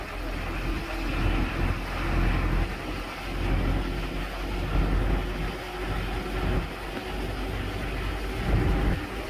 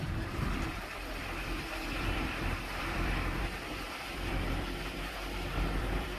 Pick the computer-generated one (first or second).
second